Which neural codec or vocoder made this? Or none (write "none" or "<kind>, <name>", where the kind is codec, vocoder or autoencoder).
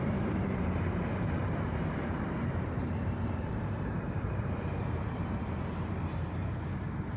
vocoder, BigVGAN v2